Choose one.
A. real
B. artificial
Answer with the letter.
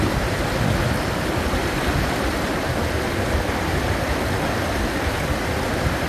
A